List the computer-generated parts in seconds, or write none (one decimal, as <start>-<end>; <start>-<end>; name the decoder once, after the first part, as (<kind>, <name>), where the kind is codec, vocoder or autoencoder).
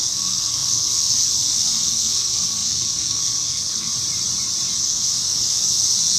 0.0-3.9 (codec, SNAC); 4.8-6.2